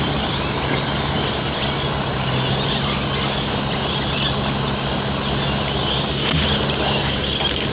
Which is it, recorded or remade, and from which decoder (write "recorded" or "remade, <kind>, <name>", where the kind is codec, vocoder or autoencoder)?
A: recorded